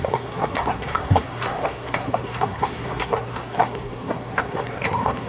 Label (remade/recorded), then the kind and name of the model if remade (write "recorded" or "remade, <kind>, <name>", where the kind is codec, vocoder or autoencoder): remade, codec, SNAC